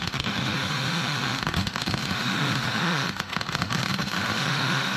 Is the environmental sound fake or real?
fake